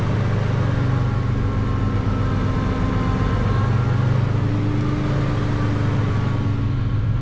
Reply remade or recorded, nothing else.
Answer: recorded